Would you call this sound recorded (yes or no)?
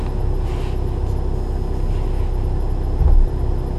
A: yes